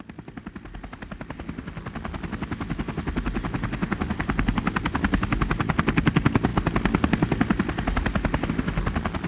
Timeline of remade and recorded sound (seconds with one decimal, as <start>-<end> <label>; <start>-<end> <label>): 0.0-9.3 recorded